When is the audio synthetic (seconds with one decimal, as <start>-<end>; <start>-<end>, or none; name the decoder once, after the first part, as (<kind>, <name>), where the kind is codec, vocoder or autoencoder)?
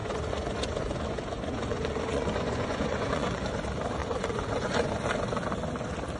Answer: 0.0-3.5 (vocoder, Vocos); 4.0-4.9